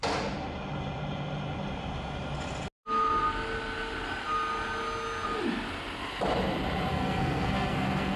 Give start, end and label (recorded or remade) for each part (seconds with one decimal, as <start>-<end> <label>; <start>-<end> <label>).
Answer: 0.0-6.9 recorded; 6.9-8.2 remade

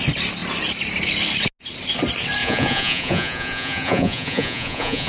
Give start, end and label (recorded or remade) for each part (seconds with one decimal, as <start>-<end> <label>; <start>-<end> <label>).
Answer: 0.0-2.4 recorded; 2.4-5.1 remade